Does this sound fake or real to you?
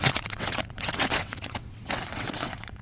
fake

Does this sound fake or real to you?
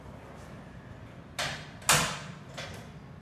real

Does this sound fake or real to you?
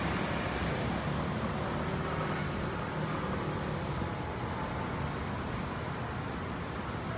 real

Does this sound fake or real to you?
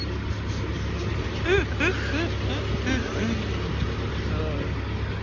real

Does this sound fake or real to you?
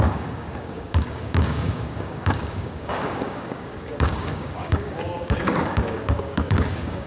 fake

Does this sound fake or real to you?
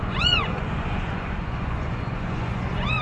fake